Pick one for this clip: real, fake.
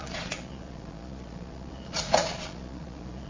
fake